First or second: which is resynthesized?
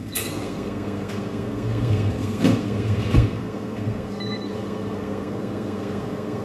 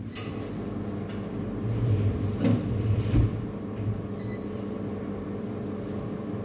first